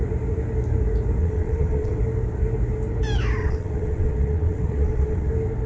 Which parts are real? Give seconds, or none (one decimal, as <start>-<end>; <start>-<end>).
0.0-1.2; 2.0-3.4; 5.3-5.7